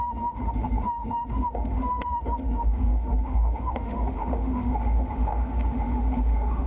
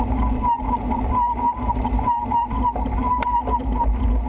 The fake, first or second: first